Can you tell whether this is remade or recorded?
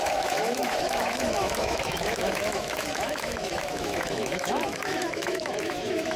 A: remade